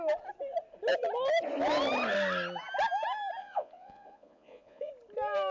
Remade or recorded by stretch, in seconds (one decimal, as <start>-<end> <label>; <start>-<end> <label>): 0.0-3.4 recorded; 3.4-4.9 remade; 4.9-5.5 recorded